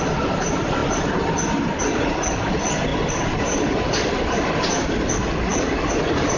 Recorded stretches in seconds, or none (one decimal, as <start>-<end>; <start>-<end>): 0.0-2.9; 4.1-5.5